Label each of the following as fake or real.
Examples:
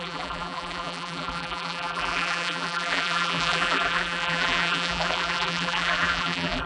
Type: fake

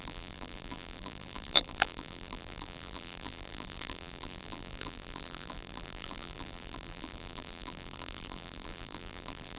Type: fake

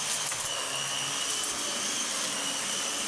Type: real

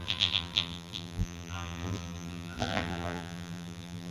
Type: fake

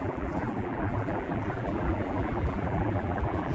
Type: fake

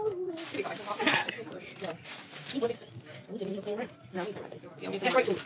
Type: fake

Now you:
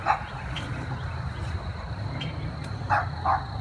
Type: fake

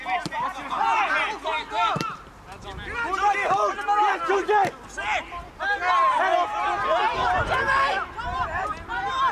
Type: real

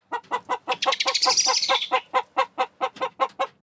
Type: real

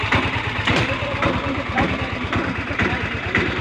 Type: fake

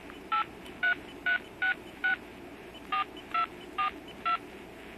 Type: fake